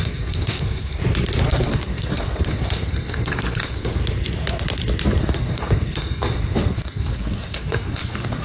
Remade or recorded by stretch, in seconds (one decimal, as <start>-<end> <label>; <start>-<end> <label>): 0.0-1.0 remade; 1.0-1.5 recorded; 1.5-4.0 remade; 4.0-5.2 recorded; 5.2-8.4 remade